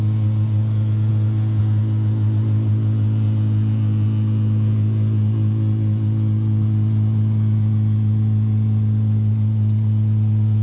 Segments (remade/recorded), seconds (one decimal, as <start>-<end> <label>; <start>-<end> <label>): 0.0-10.6 recorded